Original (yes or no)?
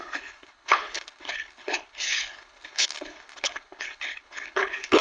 no